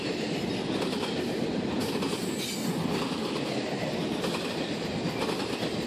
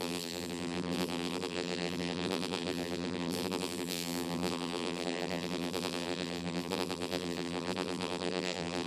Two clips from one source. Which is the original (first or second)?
first